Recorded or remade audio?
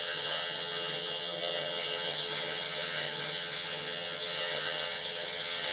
remade